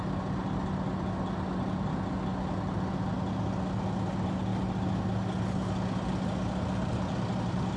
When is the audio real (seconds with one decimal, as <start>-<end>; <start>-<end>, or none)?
0.0-7.8